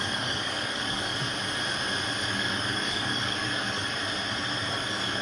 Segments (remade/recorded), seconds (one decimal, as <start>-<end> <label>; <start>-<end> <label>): 0.0-1.1 remade; 1.1-2.3 recorded; 2.3-4.0 remade; 4.0-4.7 recorded; 4.7-5.2 remade